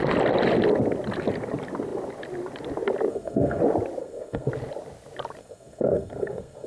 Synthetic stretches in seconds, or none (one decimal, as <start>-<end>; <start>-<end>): 3.1-3.6; 4.0-4.5; 5.4-6.7